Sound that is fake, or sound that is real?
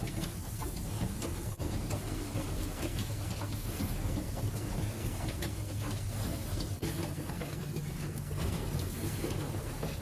fake